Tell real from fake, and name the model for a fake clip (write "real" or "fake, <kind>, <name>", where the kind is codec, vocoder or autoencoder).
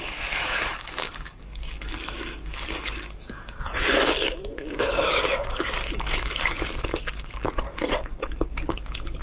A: fake, codec, DAC